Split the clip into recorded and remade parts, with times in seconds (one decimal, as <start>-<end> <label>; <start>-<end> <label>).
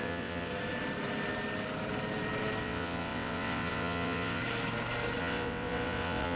0.0-0.5 remade; 0.5-2.6 recorded; 2.6-4.4 remade; 4.4-5.2 recorded; 5.2-6.4 remade